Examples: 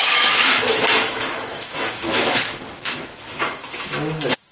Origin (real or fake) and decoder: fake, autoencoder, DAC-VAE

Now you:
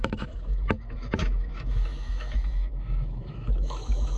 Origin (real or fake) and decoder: fake, autoencoder, DAC-VAE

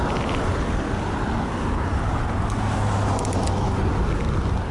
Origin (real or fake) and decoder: real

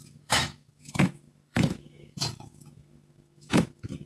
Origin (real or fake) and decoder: fake, autoencoder, DAC-VAE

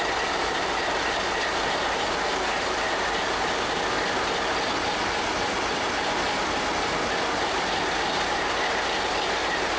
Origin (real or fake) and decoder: real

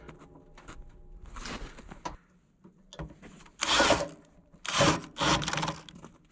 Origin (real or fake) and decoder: real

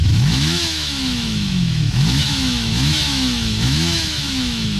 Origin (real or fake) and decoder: fake, autoencoder, DAC-VAE